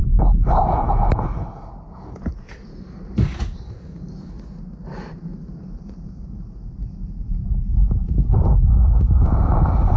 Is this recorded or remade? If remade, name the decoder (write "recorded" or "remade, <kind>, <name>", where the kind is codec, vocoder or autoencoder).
remade, vocoder, BigVGAN v2